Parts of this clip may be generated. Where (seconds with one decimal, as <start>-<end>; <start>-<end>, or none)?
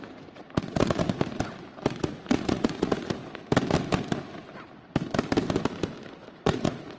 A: 0.0-1.0; 1.9-3.2; 6.1-7.0